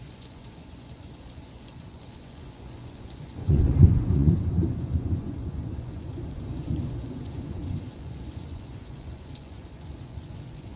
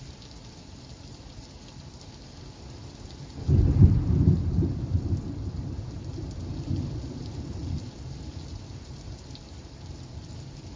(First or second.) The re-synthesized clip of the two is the first